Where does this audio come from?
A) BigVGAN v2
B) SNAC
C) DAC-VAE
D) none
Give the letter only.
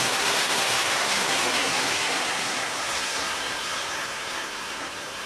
B